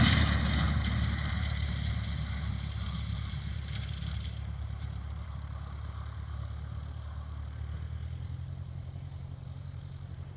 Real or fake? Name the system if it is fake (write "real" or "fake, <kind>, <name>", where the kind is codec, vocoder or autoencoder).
fake, vocoder, BigVGAN v2